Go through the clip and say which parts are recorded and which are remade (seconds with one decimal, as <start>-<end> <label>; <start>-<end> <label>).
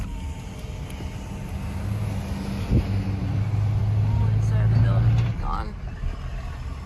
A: 0.0-6.9 recorded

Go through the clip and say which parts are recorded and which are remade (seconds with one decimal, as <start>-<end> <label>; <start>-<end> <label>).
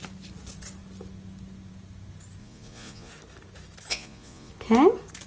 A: 0.0-2.4 recorded; 2.4-3.1 remade; 3.1-3.9 recorded; 3.9-4.5 remade; 4.5-5.3 recorded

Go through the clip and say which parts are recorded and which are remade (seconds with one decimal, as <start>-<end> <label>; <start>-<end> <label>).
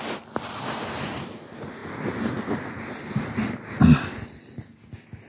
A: 0.0-5.3 recorded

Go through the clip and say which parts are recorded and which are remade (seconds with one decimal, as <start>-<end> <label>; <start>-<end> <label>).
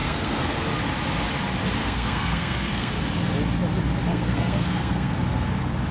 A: 0.0-0.6 remade; 0.6-1.8 recorded; 1.8-2.9 remade; 2.9-4.1 recorded; 4.1-5.1 remade; 5.1-5.9 recorded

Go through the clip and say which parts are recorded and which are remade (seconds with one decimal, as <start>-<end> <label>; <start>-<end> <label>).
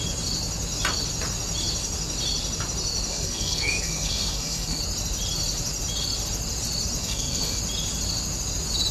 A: 0.0-3.1 recorded; 3.1-4.8 remade; 4.8-7.0 recorded; 7.0-7.6 remade; 7.6-8.9 recorded